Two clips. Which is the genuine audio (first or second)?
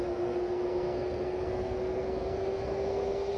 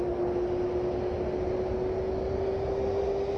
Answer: second